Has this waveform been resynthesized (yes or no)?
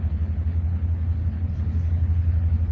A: yes